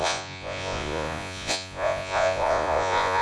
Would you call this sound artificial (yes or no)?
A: yes